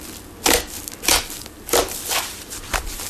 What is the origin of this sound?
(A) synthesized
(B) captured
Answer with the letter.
B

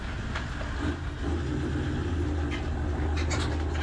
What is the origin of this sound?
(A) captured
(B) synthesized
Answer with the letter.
A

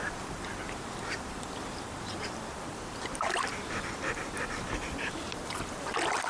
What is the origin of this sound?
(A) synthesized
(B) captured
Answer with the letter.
A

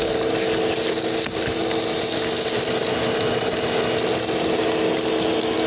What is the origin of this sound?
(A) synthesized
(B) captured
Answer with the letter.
B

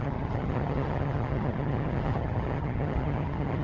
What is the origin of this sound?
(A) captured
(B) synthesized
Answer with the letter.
B